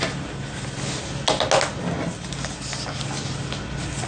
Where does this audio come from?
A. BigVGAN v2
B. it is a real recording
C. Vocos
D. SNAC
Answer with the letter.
B